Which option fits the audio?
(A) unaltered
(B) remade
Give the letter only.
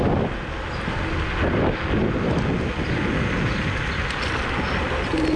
A